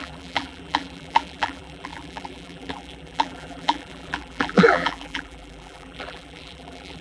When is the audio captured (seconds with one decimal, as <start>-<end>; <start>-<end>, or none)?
none